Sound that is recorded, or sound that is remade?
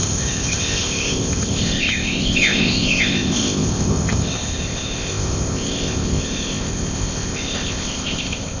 remade